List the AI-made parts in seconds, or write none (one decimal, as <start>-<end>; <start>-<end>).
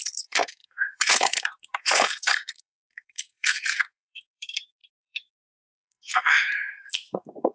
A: 0.0-7.5